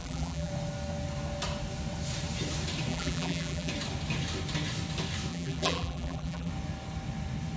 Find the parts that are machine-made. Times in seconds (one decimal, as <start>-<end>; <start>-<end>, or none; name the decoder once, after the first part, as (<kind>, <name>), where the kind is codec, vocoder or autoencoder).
0.0-0.5 (vocoder, BigVGAN v2); 2.9-3.7; 5.3-6.5